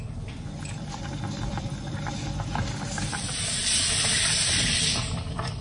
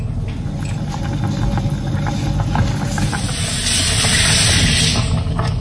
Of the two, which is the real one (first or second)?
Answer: second